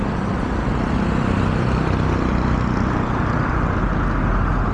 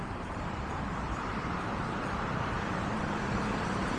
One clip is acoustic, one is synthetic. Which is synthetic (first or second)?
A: second